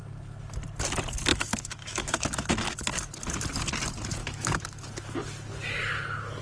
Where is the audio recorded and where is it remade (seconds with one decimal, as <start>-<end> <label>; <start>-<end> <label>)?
0.0-1.3 recorded; 1.3-2.5 remade; 2.5-4.2 recorded; 4.2-4.8 remade; 4.8-6.4 recorded